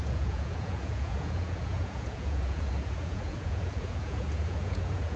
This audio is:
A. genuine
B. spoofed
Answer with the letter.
B